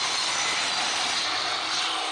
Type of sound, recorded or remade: recorded